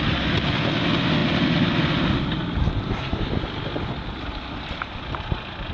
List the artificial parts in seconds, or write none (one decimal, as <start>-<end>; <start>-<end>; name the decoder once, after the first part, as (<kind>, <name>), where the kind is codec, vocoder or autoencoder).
none